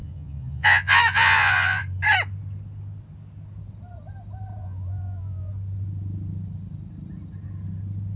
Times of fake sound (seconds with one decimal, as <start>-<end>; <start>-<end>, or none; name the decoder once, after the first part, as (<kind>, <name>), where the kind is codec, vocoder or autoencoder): 0.0-1.8 (vocoder, Vocos); 4.6-5.5